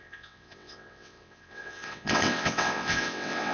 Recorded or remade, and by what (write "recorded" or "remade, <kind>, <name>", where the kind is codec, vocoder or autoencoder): remade, vocoder, WaveNeXt